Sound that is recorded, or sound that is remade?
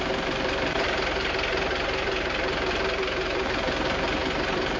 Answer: remade